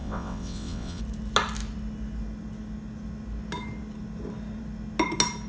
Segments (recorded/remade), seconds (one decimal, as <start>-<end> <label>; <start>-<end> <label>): 0.0-1.0 remade; 1.0-5.5 recorded